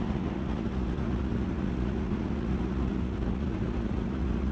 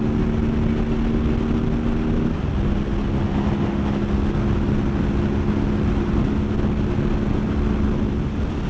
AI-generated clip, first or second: first